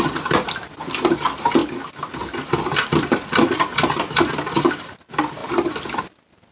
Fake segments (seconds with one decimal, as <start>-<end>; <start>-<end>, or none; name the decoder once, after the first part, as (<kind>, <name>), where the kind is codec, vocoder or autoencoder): 0.0-3.7 (vocoder, BigVGAN v2); 4.2-6.5